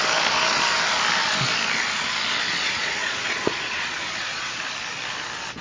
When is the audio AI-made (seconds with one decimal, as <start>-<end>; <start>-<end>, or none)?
2.6-4.6